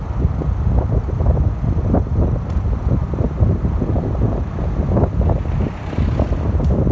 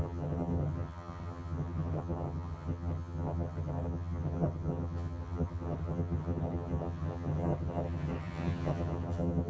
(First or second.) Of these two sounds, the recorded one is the first